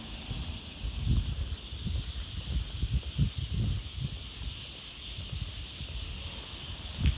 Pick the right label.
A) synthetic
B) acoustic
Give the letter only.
B